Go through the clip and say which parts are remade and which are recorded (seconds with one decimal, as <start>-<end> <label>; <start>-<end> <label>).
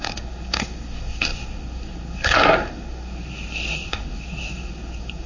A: 0.0-5.3 remade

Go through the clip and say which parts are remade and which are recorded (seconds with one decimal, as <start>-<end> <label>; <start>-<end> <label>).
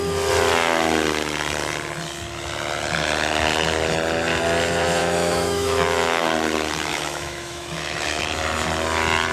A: 0.0-5.0 recorded; 5.0-6.2 remade; 6.2-6.9 recorded; 6.9-8.2 remade; 8.2-9.3 recorded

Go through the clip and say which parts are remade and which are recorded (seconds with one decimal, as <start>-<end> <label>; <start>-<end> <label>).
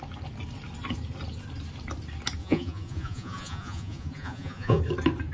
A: 0.0-2.4 recorded; 2.4-4.8 remade; 4.8-5.3 recorded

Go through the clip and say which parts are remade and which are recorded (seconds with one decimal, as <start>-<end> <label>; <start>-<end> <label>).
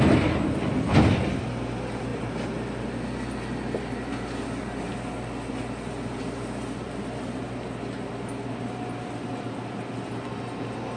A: 0.0-2.1 recorded; 2.1-2.8 remade; 2.8-11.0 recorded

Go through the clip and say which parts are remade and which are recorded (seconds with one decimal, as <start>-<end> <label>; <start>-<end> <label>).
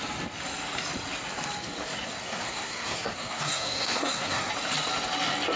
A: 0.0-2.2 recorded; 2.2-4.5 remade; 4.5-5.6 recorded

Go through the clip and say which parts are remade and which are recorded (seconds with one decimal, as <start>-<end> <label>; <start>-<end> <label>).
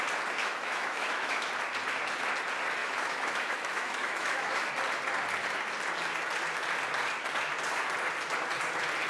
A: 0.0-0.4 recorded; 0.4-1.5 remade; 1.5-2.8 recorded; 2.8-4.7 remade; 4.7-9.1 recorded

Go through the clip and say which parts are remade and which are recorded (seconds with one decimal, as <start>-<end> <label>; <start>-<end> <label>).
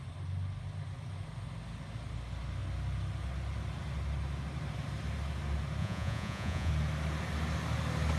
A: 0.0-5.8 recorded; 5.8-6.7 remade; 6.7-8.2 recorded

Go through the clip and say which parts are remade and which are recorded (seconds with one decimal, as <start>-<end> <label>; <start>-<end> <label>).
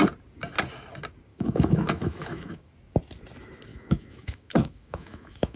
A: 0.0-1.3 recorded; 1.3-2.7 remade; 2.7-3.7 recorded; 3.7-5.6 remade